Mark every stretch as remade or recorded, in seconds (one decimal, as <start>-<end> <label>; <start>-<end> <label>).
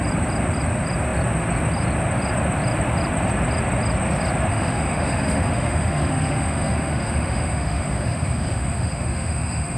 0.0-4.5 recorded; 4.5-9.8 remade